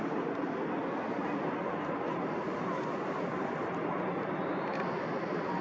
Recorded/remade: recorded